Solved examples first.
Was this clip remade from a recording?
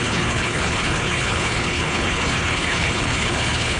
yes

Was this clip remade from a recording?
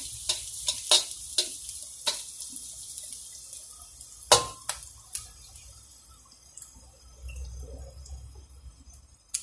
no